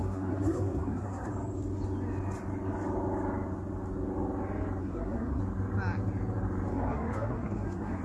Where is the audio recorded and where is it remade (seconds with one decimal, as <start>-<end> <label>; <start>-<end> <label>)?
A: 0.0-1.3 remade; 1.3-4.8 recorded; 4.8-5.4 remade; 5.4-6.7 recorded; 6.7-8.0 remade